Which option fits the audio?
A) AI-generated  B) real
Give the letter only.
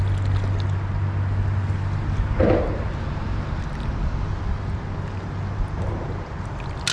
B